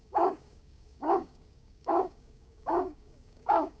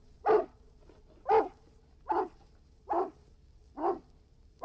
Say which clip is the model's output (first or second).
first